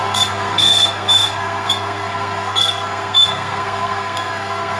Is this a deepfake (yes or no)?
yes